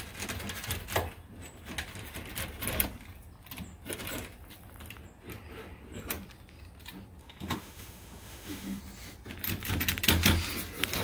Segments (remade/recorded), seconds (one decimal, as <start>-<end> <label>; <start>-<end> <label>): 0.0-7.2 recorded; 7.2-8.8 remade; 8.8-11.0 recorded